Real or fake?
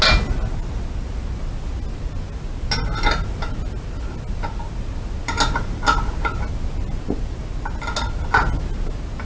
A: real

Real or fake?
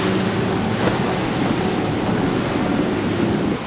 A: real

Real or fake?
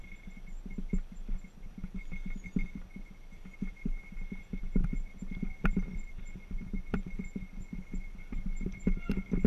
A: real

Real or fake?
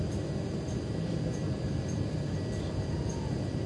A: real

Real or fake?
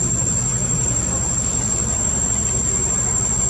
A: real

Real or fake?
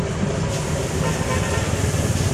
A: real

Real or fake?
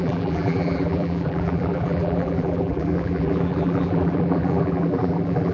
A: fake